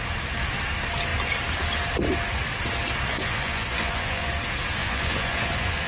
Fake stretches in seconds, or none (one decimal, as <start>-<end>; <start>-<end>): 3.1-4.3; 4.8-5.9